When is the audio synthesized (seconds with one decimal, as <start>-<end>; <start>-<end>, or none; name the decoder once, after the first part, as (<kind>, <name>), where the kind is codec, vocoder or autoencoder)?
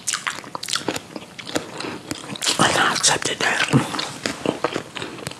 none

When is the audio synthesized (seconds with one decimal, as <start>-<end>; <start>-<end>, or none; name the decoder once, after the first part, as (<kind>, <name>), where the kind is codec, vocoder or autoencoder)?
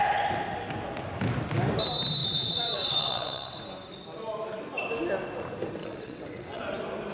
2.2-3.6 (vocoder, WaveNeXt); 5.8-6.6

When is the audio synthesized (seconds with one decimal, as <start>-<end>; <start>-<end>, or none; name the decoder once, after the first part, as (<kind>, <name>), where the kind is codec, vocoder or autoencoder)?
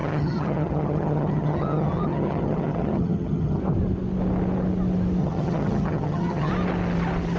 0.0-3.6 (vocoder, HiFi-GAN); 5.2-6.5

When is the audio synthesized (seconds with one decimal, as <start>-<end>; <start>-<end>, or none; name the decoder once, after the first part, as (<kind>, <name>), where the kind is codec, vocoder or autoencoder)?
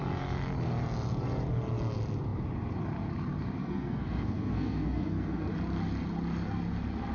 3.6-5.5 (codec, SNAC)